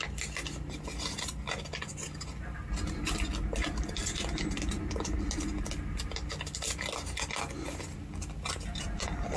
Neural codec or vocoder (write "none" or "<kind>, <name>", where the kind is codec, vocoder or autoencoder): none